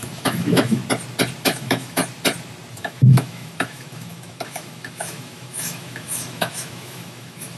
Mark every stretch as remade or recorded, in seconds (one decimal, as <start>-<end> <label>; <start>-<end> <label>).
0.0-0.8 remade; 0.8-1.4 recorded; 1.4-2.0 remade; 2.0-2.7 recorded; 2.7-7.6 remade